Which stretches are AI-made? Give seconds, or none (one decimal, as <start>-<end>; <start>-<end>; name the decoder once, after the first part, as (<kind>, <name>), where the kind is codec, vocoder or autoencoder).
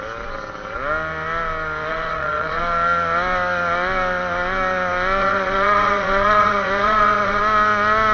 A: 1.9-2.6 (vocoder, WaveNeXt); 5.2-7.4